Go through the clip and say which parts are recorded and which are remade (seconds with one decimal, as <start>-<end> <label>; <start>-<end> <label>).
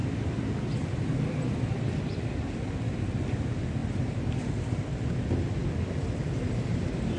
0.0-3.8 recorded; 3.8-4.8 remade; 4.8-5.6 recorded; 5.6-6.3 remade; 6.3-7.2 recorded